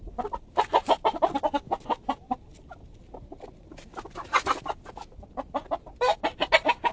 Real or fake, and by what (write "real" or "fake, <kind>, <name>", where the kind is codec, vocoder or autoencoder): real